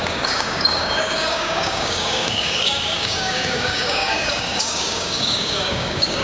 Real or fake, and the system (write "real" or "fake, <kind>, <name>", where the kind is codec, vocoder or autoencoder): fake, codec, DAC